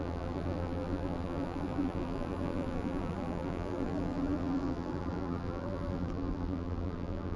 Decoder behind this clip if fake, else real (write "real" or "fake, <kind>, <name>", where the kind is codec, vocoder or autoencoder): fake, vocoder, BigVGAN v2